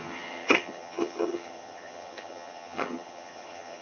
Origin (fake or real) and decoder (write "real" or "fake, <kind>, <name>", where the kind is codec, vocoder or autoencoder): fake, vocoder, HiFi-GAN